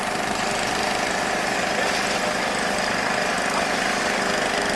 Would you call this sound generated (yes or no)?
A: no